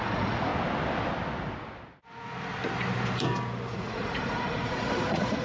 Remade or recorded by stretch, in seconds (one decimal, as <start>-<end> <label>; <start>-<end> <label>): 0.0-0.5 remade; 0.5-3.7 recorded; 3.7-5.4 remade